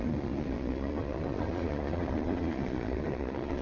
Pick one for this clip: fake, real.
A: fake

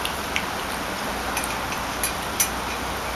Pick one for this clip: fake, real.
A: real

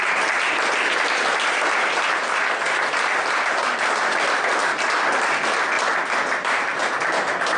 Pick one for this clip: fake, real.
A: fake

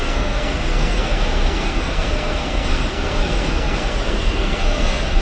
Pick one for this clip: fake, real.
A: fake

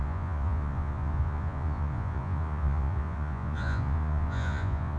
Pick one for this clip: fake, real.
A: fake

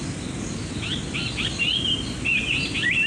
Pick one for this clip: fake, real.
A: real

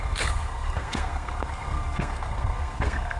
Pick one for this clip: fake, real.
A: fake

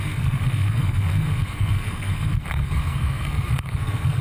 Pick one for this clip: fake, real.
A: fake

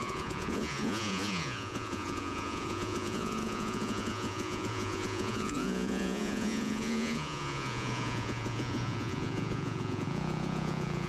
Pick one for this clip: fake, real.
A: fake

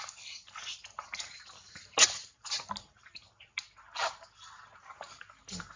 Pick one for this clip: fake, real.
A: real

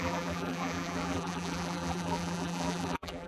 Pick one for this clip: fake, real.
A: fake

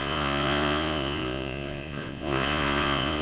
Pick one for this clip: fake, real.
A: fake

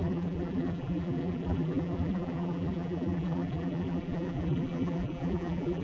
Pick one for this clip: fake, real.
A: fake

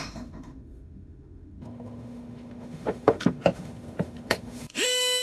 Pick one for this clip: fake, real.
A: fake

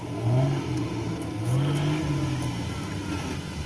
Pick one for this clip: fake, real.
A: real